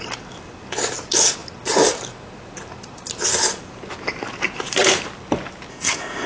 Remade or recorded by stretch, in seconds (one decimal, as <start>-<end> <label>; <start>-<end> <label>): 0.0-5.7 recorded; 5.7-6.3 remade